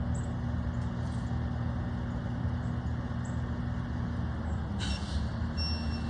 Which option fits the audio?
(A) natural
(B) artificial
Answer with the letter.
A